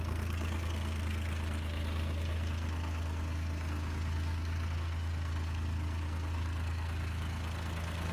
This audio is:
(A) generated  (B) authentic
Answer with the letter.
A